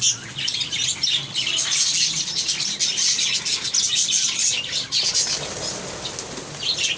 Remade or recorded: recorded